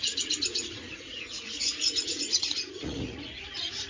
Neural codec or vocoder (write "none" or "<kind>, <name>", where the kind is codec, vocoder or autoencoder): vocoder, Vocos